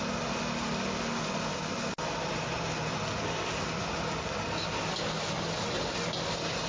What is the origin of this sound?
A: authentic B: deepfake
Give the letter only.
A